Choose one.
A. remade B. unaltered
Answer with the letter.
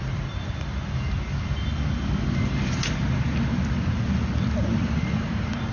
A